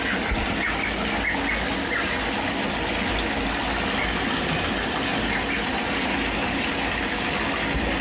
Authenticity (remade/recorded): recorded